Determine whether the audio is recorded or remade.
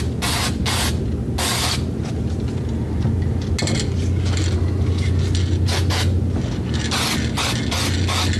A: recorded